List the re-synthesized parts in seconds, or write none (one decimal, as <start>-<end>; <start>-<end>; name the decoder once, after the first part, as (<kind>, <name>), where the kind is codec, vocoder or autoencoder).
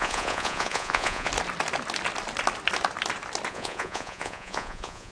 0.0-1.3 (vocoder, Vocos); 3.5-5.1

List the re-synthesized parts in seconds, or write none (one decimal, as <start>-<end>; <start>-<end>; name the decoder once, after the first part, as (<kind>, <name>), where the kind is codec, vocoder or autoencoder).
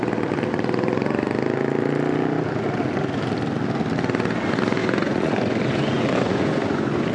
4.8-7.1 (vocoder, Vocos)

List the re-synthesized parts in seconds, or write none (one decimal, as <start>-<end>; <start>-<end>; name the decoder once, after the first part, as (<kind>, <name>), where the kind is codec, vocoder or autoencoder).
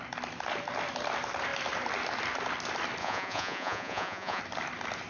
3.0-4.4 (vocoder, Vocos)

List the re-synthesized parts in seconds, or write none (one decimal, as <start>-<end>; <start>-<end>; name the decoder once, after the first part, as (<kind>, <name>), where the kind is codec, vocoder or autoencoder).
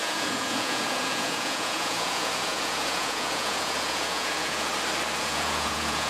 0.0-4.7 (vocoder, Vocos); 5.2-6.1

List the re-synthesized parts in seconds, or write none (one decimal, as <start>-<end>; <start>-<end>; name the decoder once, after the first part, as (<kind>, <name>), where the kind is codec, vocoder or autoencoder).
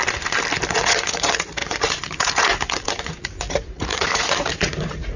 0.7-5.2 (vocoder, Vocos)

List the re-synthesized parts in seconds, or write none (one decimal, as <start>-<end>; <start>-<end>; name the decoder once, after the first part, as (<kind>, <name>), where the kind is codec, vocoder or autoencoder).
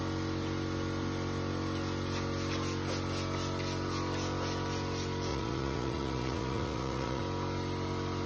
5.3-7.2 (vocoder, Vocos)